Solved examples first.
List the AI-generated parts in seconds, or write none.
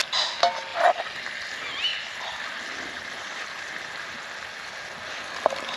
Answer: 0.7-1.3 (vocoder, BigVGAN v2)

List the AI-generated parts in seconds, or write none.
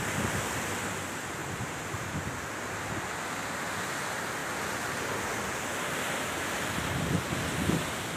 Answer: 1.4-2.3 (vocoder, BigVGAN v2)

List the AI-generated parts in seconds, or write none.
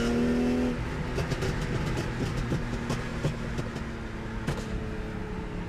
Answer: 5.2-5.7 (vocoder, BigVGAN v2)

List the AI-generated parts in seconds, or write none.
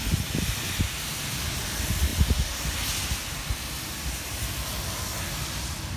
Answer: 0.0-2.1 (vocoder, BigVGAN v2); 3.7-5.1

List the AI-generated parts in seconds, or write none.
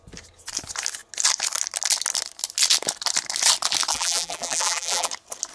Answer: 3.9-5.1 (vocoder, BigVGAN v2)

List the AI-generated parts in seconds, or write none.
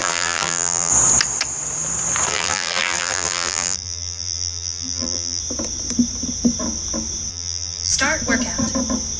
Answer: 0.0-0.9 (vocoder, BigVGAN v2); 2.3-5.4; 7.3-7.9